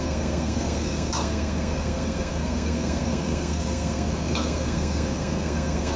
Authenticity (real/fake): fake